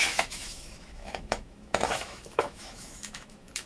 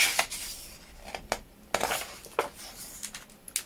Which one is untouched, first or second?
second